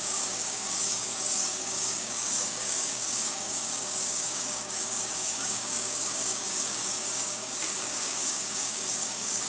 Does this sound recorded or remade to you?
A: remade